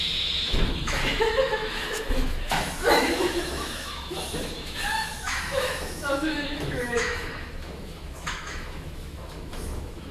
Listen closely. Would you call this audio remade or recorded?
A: remade